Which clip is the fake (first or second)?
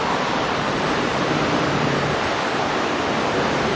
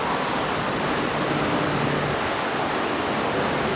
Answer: first